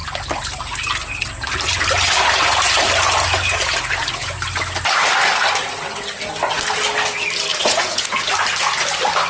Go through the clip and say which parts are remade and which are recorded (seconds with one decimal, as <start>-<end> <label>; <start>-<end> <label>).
0.0-7.5 recorded; 7.5-8.2 remade; 8.2-9.3 recorded